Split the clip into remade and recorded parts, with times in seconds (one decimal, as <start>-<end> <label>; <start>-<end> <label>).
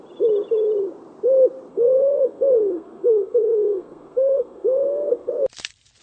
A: 0.0-1.7 recorded; 1.7-5.3 remade; 5.3-6.0 recorded